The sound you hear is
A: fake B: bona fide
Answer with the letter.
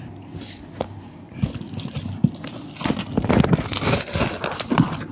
B